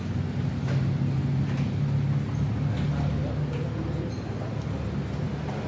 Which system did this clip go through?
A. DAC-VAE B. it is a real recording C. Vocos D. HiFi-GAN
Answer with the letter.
B